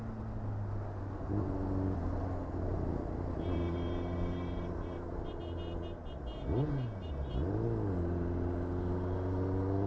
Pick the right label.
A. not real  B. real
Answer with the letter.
B